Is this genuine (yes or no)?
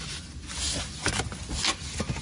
yes